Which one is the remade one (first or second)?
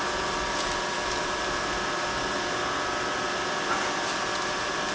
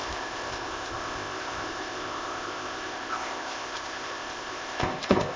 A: second